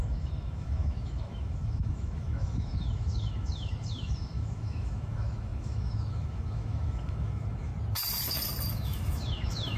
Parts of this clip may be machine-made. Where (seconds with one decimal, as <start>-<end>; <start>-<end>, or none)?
0.0-7.7; 8.7-9.8